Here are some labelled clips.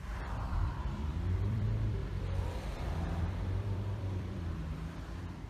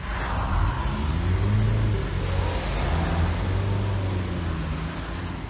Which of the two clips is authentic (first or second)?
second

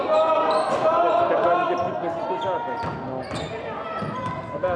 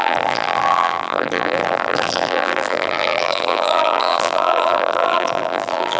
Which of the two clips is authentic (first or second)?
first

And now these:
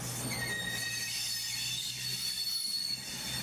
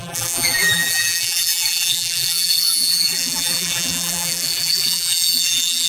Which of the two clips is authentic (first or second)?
first